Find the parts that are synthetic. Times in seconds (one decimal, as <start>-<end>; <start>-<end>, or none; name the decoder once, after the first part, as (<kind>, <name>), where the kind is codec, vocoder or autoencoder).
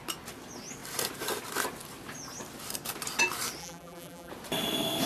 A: 3.6-4.3 (vocoder, BigVGAN v2)